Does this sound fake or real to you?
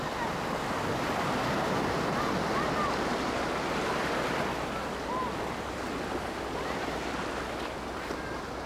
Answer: real